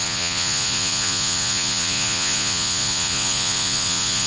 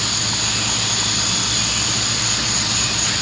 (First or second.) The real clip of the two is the second